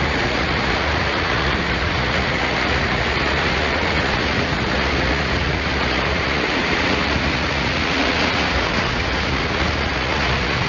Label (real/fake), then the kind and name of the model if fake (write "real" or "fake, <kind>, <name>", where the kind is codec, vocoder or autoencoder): fake, vocoder, Vocos